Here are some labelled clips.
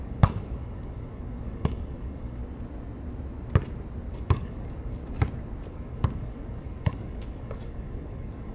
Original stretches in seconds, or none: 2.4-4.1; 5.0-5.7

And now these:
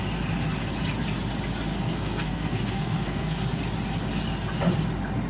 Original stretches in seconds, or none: 0.0-1.7; 3.6-5.3

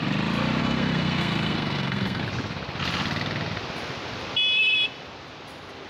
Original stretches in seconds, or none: 0.0-0.6; 2.2-5.9

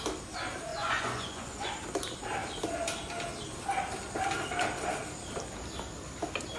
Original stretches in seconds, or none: 0.0-0.7; 1.7-6.6

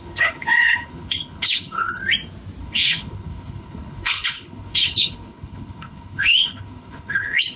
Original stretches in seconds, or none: 2.0-2.6

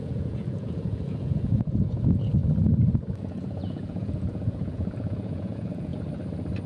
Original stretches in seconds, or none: 2.4-3.2; 5.9-6.7

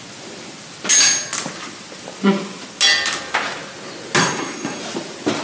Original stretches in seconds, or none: 0.0-4.2; 4.8-5.4

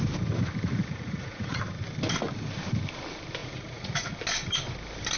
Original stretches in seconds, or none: 0.0-0.8; 1.6-3.4; 4.1-5.2